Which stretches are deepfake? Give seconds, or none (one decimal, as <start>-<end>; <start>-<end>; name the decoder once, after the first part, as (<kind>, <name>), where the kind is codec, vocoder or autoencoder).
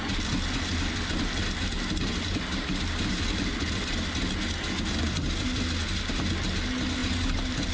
7.0-7.7 (vocoder, BigVGAN v2)